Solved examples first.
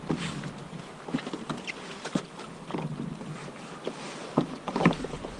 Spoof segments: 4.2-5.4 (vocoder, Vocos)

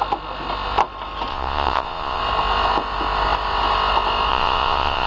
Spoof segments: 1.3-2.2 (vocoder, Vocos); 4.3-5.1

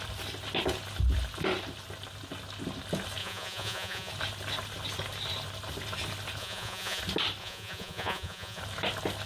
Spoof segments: 3.2-4.1 (vocoder, Vocos); 6.4-7.0; 7.4-8.6

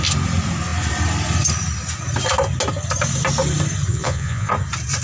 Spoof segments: 3.9-4.5 (vocoder, Vocos)

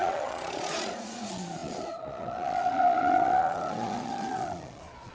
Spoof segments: 0.0-5.1 (vocoder, Vocos)

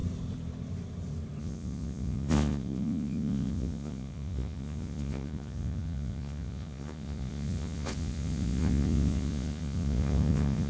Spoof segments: 1.4-10.7 (vocoder, Vocos)

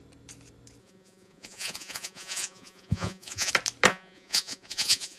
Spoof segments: 0.8-3.5 (vocoder, Vocos); 3.9-5.2